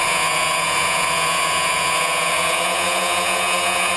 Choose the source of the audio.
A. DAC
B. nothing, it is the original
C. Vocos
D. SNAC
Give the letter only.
C